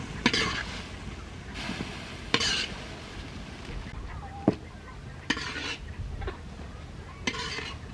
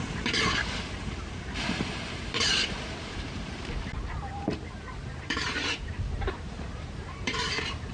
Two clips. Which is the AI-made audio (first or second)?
second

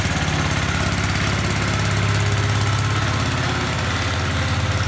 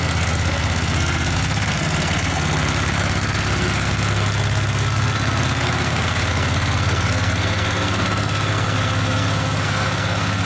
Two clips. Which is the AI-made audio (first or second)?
second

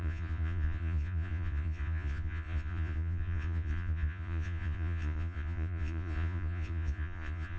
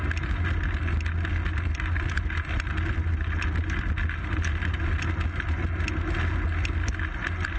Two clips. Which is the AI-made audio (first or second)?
first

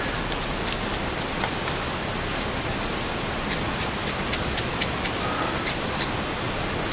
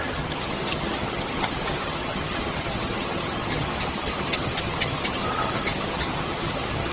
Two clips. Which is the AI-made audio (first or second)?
second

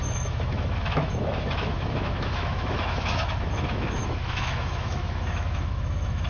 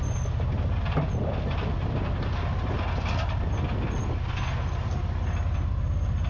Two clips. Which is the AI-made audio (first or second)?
first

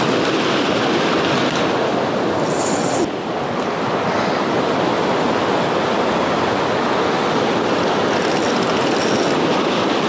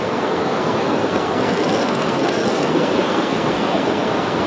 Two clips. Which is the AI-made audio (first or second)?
second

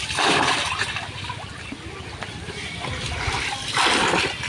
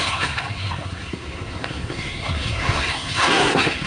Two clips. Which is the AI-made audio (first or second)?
second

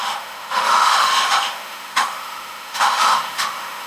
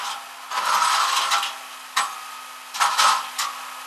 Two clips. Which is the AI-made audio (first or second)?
first